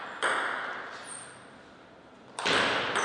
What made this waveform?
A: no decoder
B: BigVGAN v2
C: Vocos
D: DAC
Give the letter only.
A